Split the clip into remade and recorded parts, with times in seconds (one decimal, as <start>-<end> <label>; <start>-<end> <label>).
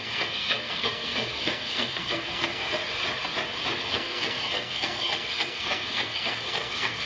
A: 0.0-2.8 remade; 2.8-3.8 recorded; 3.8-7.1 remade